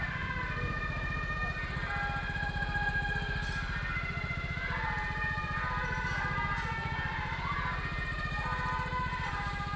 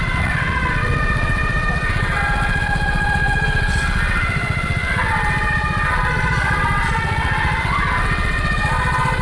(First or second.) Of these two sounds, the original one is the first